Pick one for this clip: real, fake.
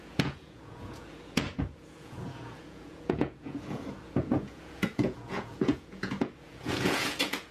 fake